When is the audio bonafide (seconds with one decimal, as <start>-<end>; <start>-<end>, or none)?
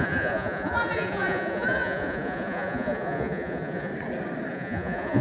3.9-4.5